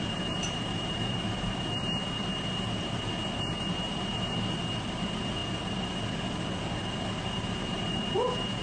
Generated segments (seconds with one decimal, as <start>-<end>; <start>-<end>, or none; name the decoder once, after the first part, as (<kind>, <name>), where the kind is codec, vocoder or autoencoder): 0.0-8.6 (vocoder, BigVGAN v2)